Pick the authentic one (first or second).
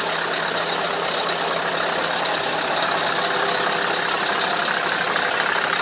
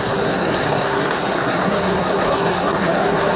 first